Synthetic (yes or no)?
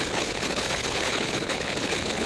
yes